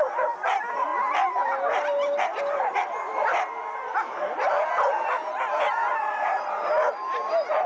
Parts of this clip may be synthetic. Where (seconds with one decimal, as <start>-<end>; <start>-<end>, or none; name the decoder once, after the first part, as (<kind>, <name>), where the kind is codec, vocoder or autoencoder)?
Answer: 0.9-4.5 (vocoder, BigVGAN v2); 5.8-6.4